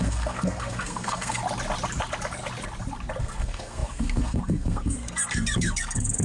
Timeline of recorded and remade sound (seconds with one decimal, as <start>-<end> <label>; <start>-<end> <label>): 0.0-1.4 remade; 1.4-3.2 recorded; 3.2-6.2 remade